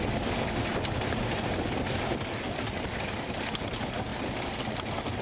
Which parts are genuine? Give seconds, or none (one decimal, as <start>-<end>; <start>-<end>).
0.0-5.2